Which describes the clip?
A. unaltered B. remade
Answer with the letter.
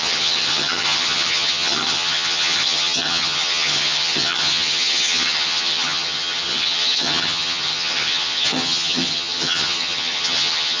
B